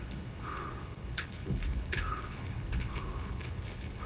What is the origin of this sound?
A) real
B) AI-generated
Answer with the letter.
B